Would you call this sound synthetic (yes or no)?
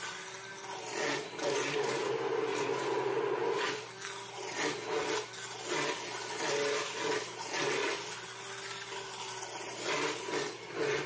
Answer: no